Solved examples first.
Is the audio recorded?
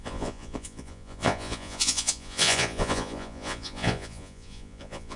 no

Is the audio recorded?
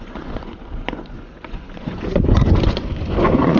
no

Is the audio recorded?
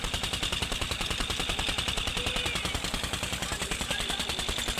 yes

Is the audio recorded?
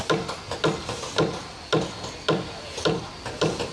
yes